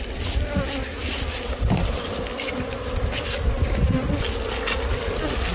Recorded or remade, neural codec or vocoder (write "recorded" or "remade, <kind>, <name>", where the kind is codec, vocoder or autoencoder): recorded